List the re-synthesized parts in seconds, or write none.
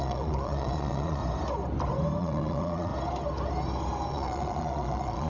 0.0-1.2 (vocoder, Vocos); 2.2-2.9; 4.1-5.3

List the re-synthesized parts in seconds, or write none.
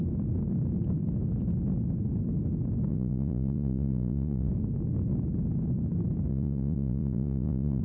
2.9-4.5 (vocoder, Vocos); 6.3-7.8